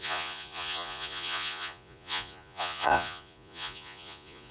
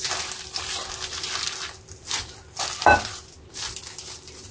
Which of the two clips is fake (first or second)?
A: first